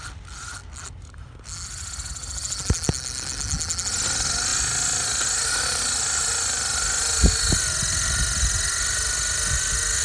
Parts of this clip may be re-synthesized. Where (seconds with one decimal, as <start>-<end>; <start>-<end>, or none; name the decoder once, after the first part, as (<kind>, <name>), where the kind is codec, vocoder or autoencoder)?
none